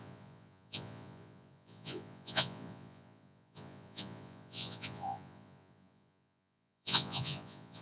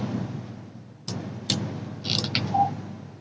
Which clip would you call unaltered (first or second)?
second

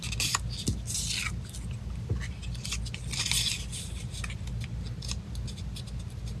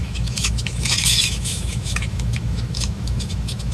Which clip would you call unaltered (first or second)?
first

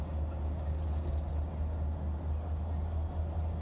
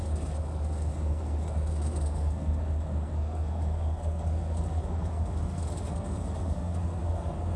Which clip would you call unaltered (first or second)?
first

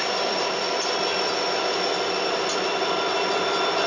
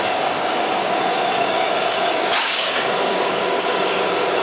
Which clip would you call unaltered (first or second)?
first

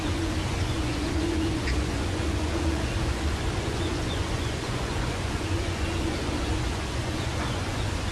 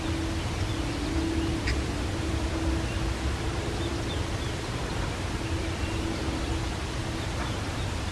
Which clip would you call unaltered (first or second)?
second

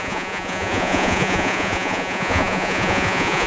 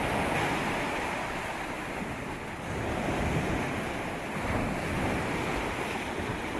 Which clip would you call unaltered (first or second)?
second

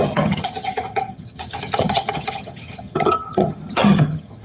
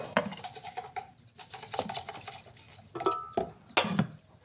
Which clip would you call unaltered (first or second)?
second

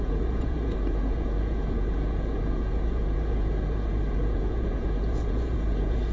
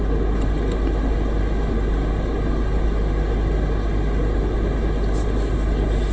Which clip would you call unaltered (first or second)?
second